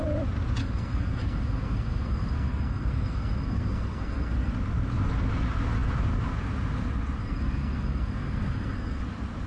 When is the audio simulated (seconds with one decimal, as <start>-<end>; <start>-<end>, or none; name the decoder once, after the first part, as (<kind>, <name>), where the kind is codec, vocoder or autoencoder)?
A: 0.6-4.5 (codec, SNAC); 7.2-9.0